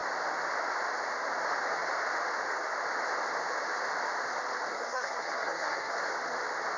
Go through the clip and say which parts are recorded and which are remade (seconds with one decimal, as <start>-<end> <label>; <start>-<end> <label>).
0.0-4.7 recorded; 4.7-6.0 remade; 6.0-6.8 recorded